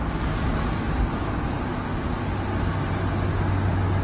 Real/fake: real